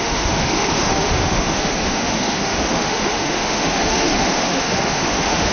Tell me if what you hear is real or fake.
fake